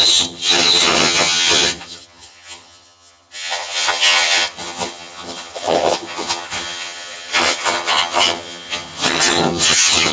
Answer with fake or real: fake